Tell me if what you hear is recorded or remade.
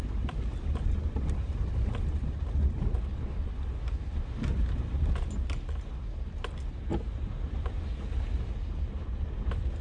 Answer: recorded